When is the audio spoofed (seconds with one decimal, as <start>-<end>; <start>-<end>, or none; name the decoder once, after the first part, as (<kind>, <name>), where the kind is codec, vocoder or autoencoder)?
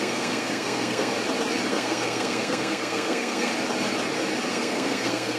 0.0-1.1 (codec, SNAC); 1.7-3.5; 4.5-5.4